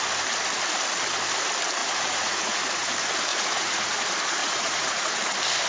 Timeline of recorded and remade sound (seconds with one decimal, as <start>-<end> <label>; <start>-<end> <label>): 0.0-1.8 recorded; 1.8-2.9 remade; 2.9-3.3 recorded; 3.3-3.9 remade; 3.9-4.4 recorded; 4.4-5.1 remade; 5.1-5.7 recorded